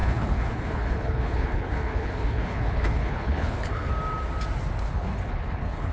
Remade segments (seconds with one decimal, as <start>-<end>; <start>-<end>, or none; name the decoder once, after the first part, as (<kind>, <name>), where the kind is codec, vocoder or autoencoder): 0.0-3.9 (codec, HILCodec); 4.8-5.9

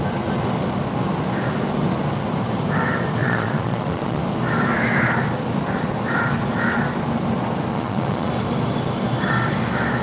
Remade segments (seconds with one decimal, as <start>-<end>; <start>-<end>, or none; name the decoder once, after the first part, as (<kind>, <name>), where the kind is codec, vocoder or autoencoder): 3.2-4.2 (vocoder, Vocos); 7.7-8.3

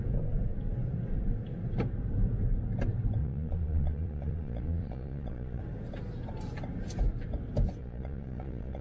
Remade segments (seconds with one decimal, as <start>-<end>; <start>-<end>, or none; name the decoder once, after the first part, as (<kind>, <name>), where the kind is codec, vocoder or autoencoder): 3.2-5.6 (vocoder, Vocos); 7.8-8.8